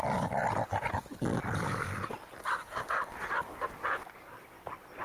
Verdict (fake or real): real